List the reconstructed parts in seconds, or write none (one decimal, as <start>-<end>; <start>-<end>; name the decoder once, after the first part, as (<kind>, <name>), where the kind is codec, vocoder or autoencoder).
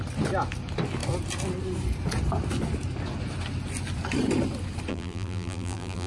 4.9-6.1 (vocoder, BigVGAN v2)